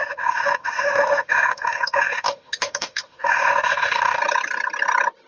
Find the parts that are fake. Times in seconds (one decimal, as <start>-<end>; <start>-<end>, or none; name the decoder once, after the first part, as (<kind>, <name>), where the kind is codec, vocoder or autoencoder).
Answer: 0.0-4.2 (autoencoder, DAC-VAE)